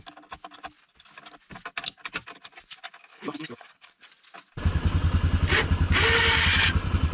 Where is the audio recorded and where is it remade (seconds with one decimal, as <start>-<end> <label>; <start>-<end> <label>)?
0.0-3.1 recorded; 3.1-3.9 remade; 3.9-7.1 recorded